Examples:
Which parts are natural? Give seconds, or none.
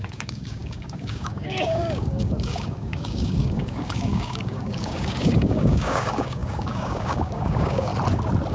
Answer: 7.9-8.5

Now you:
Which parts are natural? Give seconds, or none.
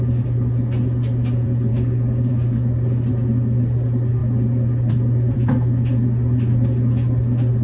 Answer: 0.0-1.7; 2.3-7.6